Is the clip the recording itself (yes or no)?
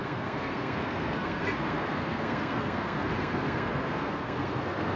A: no